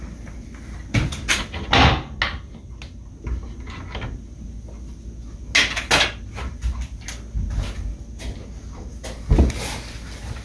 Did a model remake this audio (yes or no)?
no